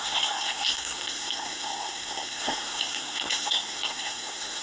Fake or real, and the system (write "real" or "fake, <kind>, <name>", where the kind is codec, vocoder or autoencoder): fake, codec, SNAC